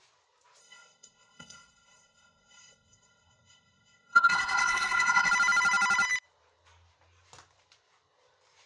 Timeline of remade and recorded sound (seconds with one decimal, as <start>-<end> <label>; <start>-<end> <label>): 0.0-0.6 recorded; 0.6-5.3 remade; 5.3-8.7 recorded